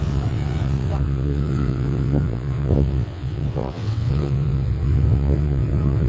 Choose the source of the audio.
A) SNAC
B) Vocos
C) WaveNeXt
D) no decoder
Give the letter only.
C